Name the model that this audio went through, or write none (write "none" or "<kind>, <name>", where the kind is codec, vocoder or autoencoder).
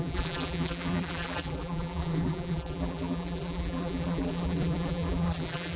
vocoder, BigVGAN v2